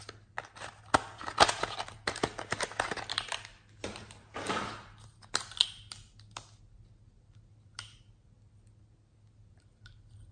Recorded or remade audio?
recorded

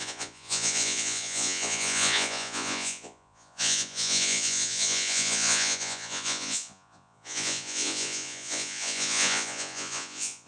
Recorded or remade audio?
remade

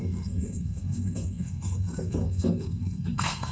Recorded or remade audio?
remade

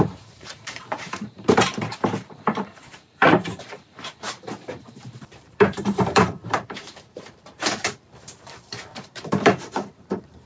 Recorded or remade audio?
remade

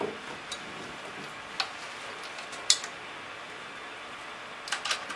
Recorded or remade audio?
recorded